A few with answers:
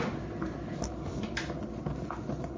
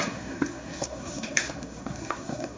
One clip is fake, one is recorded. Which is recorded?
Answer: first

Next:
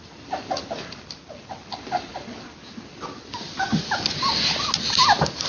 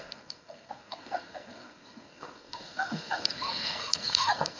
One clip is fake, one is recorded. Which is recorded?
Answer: first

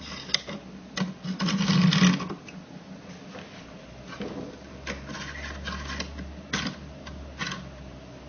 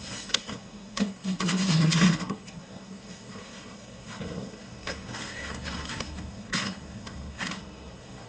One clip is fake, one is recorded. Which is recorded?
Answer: first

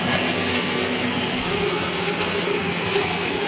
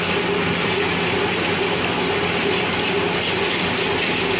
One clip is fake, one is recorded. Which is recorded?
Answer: second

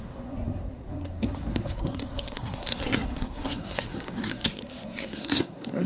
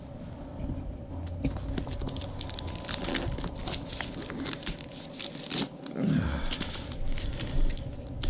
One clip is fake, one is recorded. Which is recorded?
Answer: second